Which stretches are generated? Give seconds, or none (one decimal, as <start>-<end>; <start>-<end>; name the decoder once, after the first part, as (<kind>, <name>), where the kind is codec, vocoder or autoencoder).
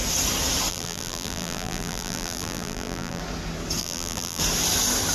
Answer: 0.7-3.2 (vocoder, BigVGAN v2); 3.8-4.4